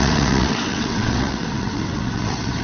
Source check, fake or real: fake